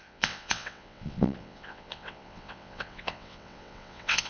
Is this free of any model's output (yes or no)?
no